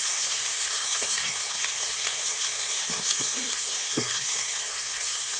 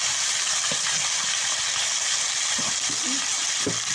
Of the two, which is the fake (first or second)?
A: first